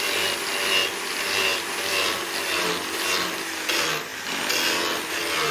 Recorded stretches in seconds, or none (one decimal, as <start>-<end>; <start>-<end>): 0.0-5.5